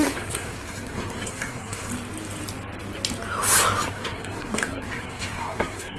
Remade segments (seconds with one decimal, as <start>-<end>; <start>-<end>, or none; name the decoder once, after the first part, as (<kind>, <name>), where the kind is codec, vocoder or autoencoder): 0.0-1.9 (codec, SNAC); 3.9-6.0